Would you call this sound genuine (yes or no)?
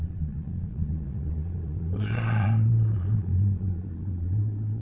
no